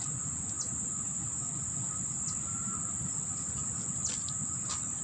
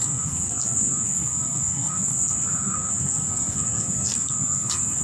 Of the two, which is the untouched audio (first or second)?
first